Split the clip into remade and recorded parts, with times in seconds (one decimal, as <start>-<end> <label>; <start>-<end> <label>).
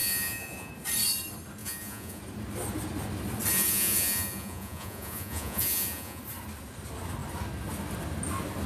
0.0-0.7 remade; 0.7-1.6 recorded; 1.6-2.2 remade; 2.2-3.5 recorded; 3.5-6.2 remade; 6.2-8.7 recorded